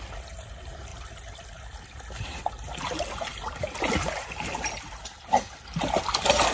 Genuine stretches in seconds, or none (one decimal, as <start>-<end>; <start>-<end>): 0.0-6.5